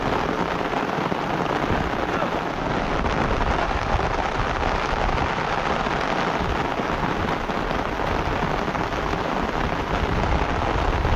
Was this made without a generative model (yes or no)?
yes